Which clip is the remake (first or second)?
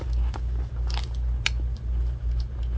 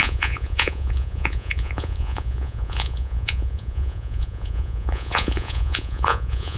second